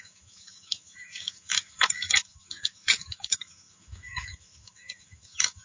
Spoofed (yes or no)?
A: yes